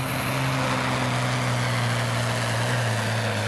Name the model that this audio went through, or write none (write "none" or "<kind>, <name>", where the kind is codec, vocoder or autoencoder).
none